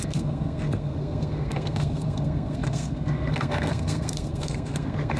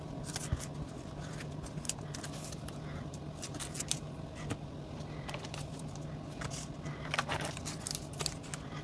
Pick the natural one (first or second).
second